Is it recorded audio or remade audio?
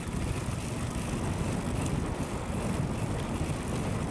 recorded